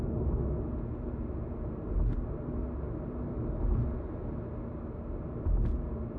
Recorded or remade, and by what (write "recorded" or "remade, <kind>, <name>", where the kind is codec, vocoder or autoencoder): recorded